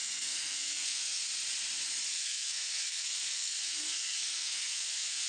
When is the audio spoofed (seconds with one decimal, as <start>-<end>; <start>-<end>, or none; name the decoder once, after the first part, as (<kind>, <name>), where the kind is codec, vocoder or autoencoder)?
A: 0.0-1.2 (codec, SNAC); 2.1-5.3